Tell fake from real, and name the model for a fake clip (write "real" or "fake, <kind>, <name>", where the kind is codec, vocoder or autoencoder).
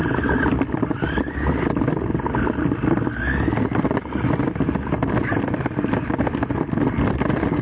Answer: real